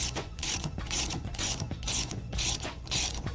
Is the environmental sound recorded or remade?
remade